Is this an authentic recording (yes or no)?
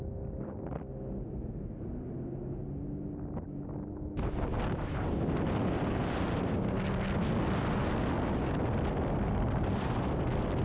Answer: yes